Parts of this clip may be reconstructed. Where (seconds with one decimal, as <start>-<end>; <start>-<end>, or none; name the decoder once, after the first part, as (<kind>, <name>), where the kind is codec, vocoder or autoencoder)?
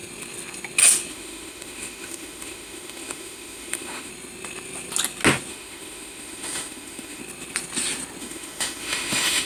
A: 1.1-4.1 (autoencoder, DAC-VAE); 5.5-7.2; 8.2-9.5